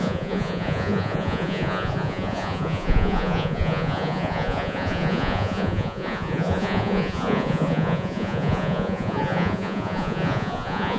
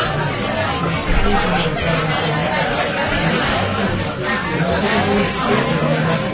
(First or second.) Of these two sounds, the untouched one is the second